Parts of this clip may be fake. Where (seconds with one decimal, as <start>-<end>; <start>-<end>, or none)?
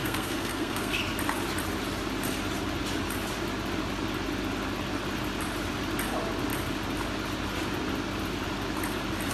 0.0-1.0